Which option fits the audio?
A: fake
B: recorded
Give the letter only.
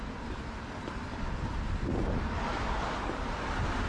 B